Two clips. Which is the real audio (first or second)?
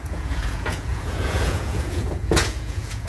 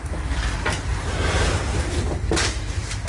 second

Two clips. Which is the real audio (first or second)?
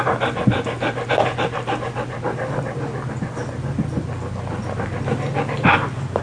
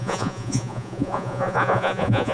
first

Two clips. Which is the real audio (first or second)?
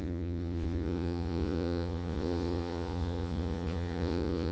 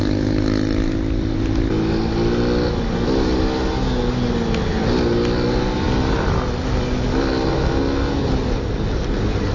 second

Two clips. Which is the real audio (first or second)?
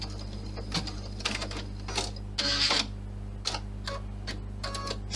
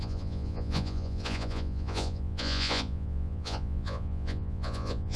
first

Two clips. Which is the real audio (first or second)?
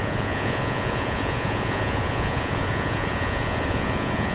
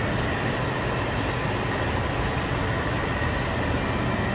second